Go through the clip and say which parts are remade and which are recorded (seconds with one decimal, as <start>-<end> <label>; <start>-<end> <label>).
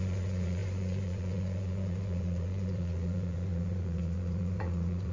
0.0-5.1 remade